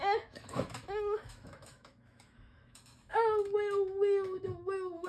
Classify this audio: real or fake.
fake